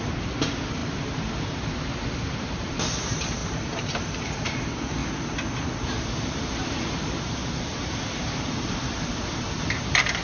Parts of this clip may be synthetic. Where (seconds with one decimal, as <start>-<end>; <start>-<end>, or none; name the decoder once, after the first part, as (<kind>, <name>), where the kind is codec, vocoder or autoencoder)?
0.0-5.0 (vocoder, BigVGAN v2); 6.7-10.2